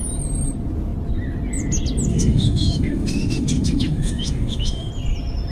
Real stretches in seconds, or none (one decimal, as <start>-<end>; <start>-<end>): 0.0-2.1; 4.9-5.5